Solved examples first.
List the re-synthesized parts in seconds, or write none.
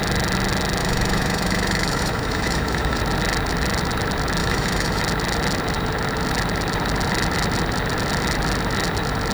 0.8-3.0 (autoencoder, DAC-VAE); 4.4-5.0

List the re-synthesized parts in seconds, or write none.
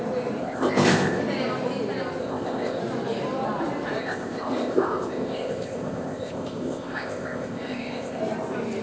0.4-1.2 (codec, ZipCodec); 2.2-2.8; 4.0-8.2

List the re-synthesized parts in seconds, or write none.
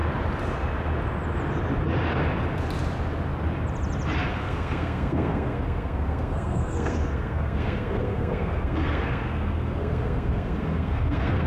4.3-11.5 (codec, SNAC)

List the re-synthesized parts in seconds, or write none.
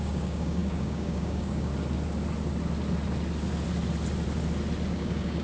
0.0-1.7 (codec, DAC); 4.9-5.4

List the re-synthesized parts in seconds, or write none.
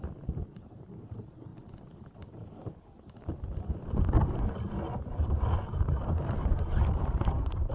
0.0-1.5 (vocoder, BigVGAN v2); 5.2-7.7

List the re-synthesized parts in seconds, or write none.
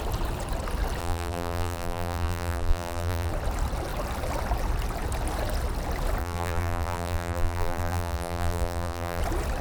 1.0-3.3 (vocoder, BigVGAN v2); 6.2-9.2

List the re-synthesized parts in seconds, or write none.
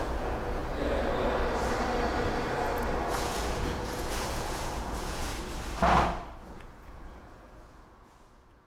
0.0-0.6 (vocoder, Vocos); 3.1-5.3; 6.5-8.7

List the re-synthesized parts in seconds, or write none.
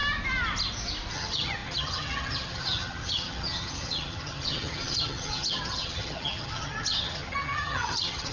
1.1-8.3 (vocoder, HiFi-GAN)